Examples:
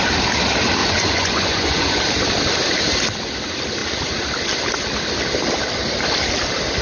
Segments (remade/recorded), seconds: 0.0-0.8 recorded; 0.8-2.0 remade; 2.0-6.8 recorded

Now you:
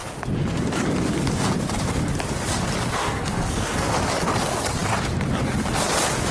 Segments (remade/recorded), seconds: 0.0-3.0 recorded; 3.0-3.9 remade; 3.9-6.3 recorded

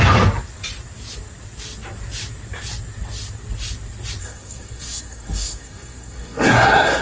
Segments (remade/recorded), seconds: 0.0-4.2 recorded; 4.2-7.0 remade

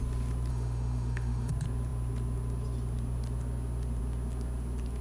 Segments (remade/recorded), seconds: 0.0-0.5 recorded; 0.5-1.5 remade; 1.5-5.0 recorded

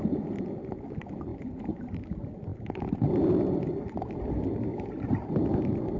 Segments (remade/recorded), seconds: 0.0-1.3 recorded; 1.3-2.0 remade; 2.0-4.7 recorded; 4.7-5.6 remade; 5.6-6.0 recorded

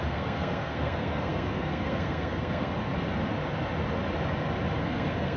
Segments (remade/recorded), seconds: 0.0-2.9 remade; 2.9-4.8 recorded; 4.8-5.4 remade

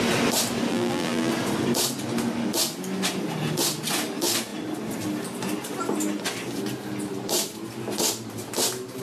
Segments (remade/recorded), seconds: 0.0-0.7 recorded; 0.7-1.3 remade; 1.3-9.0 recorded